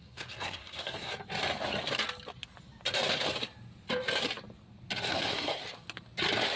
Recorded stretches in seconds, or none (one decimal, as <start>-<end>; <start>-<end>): 1.1-5.1; 5.6-6.6